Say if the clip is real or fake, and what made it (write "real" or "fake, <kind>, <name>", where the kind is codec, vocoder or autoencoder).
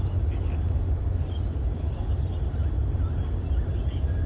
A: real